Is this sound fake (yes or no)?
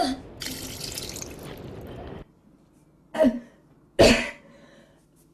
no